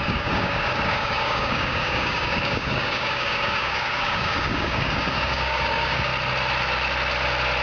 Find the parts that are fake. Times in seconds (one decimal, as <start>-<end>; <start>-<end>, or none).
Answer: 0.0-6.1

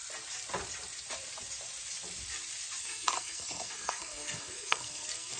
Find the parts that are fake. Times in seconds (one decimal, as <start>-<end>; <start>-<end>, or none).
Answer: 2.8-5.4

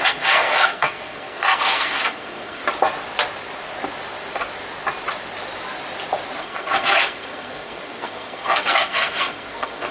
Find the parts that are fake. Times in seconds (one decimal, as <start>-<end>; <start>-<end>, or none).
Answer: 0.0-2.6; 6.4-9.9